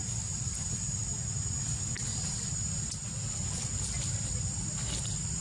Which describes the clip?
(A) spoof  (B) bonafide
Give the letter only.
B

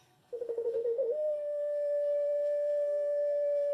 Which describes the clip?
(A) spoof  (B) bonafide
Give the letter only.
A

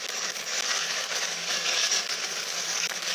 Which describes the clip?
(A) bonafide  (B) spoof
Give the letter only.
B